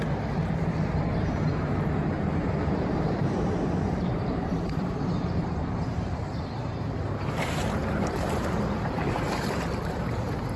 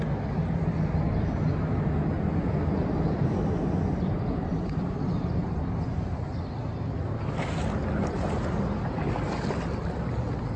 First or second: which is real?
second